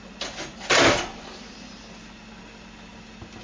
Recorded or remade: recorded